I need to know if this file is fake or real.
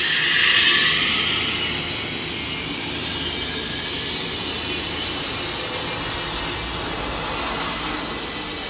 real